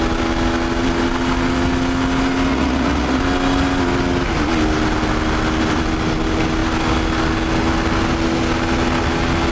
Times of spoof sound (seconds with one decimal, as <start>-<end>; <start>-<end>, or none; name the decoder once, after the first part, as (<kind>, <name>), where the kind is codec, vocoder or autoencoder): 2.5-3.2 (vocoder, Vocos)